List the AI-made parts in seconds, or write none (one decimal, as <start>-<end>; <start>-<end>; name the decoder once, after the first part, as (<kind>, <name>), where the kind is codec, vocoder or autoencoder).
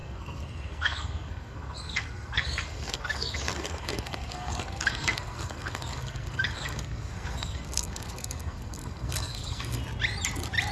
0.0-9.8 (codec, SNAC)